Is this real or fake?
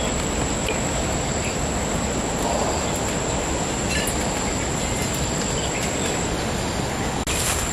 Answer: real